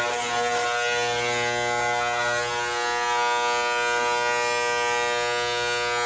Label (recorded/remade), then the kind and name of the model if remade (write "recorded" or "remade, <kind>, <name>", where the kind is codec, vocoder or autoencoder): recorded